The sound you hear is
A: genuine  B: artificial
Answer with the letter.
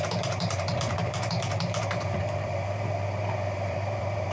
B